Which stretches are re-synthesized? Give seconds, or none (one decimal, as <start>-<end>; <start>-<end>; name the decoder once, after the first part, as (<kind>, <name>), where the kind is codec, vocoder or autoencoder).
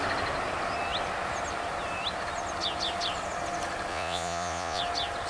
3.9-4.8 (vocoder, Vocos)